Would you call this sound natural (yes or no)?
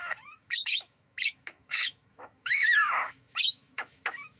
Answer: no